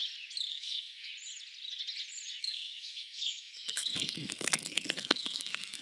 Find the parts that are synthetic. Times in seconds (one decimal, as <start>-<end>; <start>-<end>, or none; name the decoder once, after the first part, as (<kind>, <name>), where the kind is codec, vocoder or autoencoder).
0.5-1.1 (codec, SNAC); 2.4-5.8